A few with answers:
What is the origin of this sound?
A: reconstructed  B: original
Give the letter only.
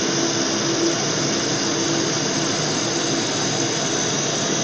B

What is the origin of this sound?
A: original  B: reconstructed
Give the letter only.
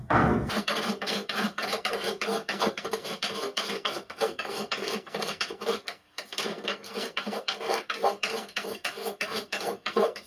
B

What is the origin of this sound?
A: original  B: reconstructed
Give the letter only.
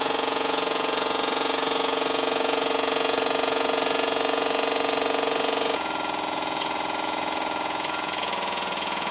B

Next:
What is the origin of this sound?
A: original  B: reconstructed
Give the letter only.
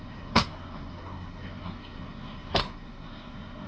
B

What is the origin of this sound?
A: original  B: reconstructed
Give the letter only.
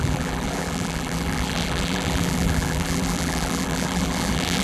B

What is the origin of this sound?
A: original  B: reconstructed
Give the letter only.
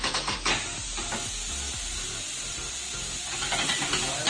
A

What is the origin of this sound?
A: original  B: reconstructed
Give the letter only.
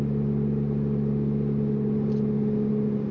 A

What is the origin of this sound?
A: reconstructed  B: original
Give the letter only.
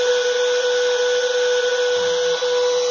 B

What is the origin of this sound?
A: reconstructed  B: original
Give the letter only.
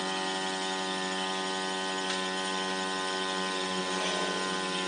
B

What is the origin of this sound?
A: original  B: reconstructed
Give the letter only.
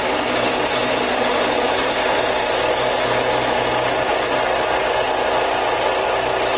B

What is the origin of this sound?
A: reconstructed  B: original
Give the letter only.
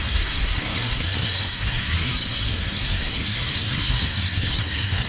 A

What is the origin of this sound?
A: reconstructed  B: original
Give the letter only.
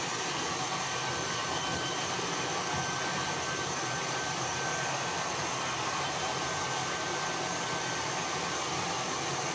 A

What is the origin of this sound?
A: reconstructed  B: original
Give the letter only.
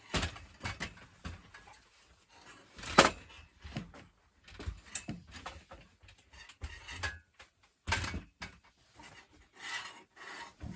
B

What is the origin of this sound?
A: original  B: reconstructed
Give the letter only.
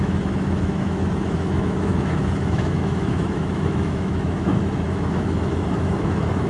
B